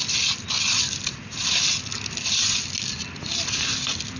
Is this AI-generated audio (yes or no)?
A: no